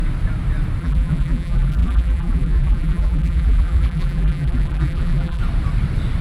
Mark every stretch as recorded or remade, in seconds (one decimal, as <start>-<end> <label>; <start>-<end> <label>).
0.0-0.8 recorded; 0.8-5.4 remade; 5.4-6.2 recorded